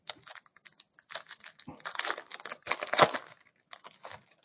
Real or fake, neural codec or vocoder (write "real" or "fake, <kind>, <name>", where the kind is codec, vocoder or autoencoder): real